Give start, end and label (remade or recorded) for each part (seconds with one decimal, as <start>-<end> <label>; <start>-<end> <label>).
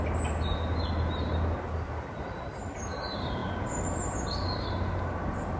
0.0-5.6 recorded